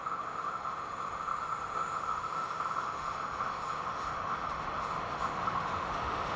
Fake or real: fake